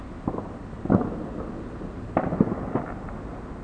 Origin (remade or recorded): recorded